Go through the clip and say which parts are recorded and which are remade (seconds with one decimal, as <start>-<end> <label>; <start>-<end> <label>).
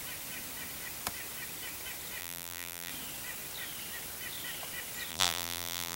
0.0-2.2 recorded; 2.2-2.9 remade; 2.9-5.1 recorded; 5.1-6.0 remade